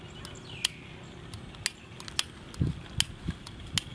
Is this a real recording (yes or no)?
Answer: yes